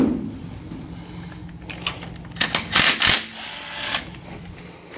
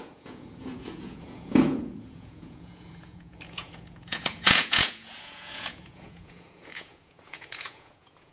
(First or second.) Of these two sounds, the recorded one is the first